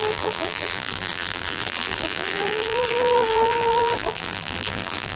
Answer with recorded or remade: remade